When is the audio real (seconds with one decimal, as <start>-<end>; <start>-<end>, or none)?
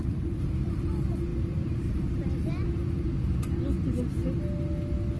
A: 0.0-5.2